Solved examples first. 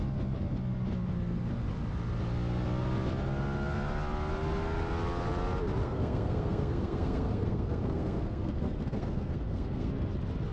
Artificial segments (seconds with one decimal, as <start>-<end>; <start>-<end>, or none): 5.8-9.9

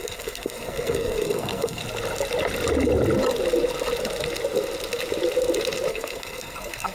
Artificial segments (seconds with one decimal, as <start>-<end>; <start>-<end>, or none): 0.0-1.8; 5.9-6.9

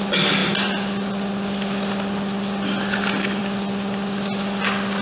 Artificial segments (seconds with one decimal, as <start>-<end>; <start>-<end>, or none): none